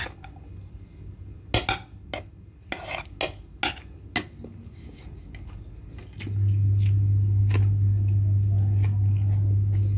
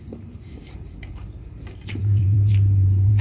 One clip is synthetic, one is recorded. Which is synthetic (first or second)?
second